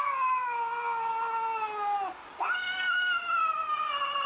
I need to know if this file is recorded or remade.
recorded